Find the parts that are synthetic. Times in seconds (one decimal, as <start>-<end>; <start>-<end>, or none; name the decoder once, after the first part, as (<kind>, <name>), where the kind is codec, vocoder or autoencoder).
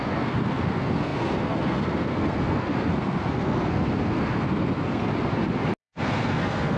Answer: 0.0-5.1 (codec, SNAC); 5.8-6.8